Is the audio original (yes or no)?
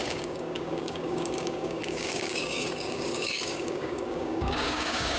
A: no